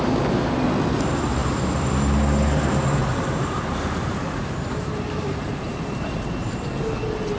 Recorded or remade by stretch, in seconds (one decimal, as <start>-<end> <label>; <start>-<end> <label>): 0.0-1.4 recorded; 1.4-1.9 remade; 1.9-3.0 recorded; 3.0-6.7 remade; 6.7-7.4 recorded

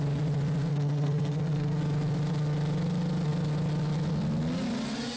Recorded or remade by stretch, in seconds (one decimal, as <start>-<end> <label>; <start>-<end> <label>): 0.0-0.7 recorded; 0.7-1.8 remade; 1.8-5.2 recorded

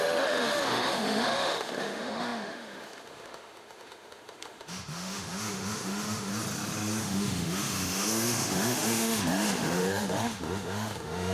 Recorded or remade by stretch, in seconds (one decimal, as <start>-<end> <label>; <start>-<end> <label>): 0.0-6.3 remade; 6.3-7.0 recorded; 7.0-11.3 remade

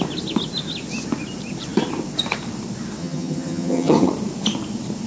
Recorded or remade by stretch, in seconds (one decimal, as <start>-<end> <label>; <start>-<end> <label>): 0.0-3.0 recorded; 3.0-4.1 remade; 4.1-5.1 recorded

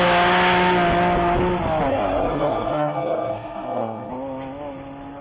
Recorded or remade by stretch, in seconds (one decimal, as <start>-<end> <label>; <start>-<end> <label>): 0.0-1.9 recorded; 1.9-4.1 remade; 4.1-5.2 recorded

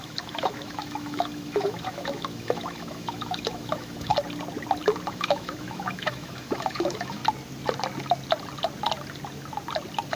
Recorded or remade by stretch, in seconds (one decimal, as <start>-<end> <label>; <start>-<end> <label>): 0.0-4.1 remade; 4.1-5.1 recorded; 5.1-7.2 remade; 7.2-10.1 recorded

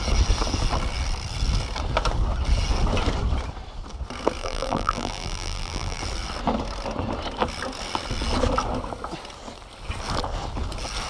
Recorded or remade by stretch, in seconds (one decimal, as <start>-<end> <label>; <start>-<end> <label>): 0.0-4.4 recorded; 4.4-6.0 remade; 6.0-11.1 recorded